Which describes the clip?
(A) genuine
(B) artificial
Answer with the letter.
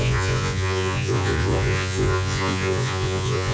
B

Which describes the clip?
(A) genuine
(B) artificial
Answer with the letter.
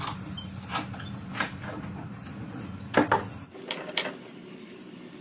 A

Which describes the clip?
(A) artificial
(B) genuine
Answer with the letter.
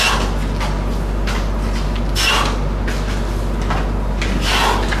B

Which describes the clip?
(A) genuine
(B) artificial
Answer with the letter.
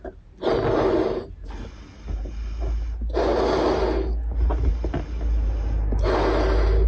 A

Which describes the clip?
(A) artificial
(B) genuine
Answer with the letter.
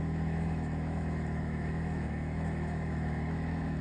A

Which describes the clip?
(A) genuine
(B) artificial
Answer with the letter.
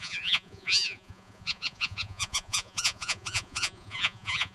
B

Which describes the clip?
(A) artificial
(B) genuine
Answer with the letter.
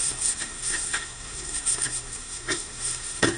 A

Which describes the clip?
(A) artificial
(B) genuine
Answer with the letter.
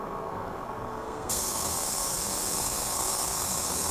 A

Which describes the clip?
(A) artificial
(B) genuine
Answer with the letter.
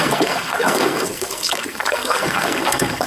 A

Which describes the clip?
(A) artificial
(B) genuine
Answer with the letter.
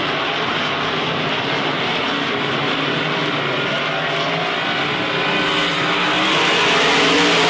B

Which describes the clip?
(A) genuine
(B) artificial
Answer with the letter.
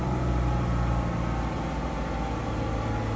A